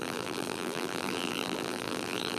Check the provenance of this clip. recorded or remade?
remade